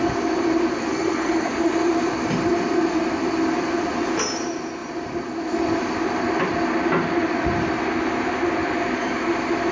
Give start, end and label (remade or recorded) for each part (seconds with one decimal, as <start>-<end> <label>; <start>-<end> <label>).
0.0-0.8 recorded; 0.8-1.5 remade; 1.5-9.7 recorded